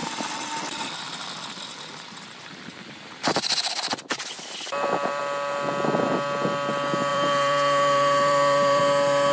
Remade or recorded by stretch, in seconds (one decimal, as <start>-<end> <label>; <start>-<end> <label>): 0.0-5.2 remade; 5.2-7.1 recorded; 7.1-8.8 remade; 8.8-9.3 recorded